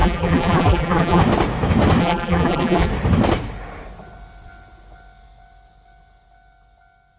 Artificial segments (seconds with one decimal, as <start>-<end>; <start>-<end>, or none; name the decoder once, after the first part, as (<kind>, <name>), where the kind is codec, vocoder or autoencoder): 0.0-1.2 (vocoder, BigVGAN v2); 2.0-2.9